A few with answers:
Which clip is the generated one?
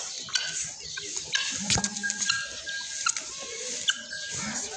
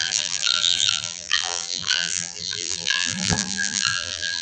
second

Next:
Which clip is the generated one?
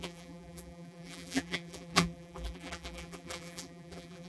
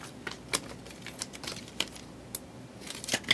first